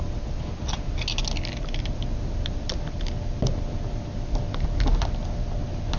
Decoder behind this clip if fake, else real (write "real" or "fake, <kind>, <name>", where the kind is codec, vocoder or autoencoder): real